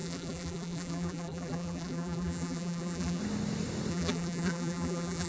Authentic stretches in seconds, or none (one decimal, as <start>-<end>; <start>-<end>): 3.2-3.9